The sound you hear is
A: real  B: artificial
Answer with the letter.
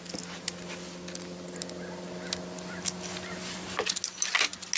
A